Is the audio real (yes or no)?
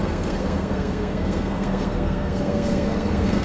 no